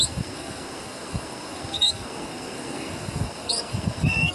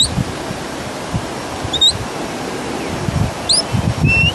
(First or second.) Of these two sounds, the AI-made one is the first